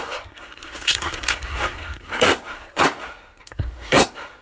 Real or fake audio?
fake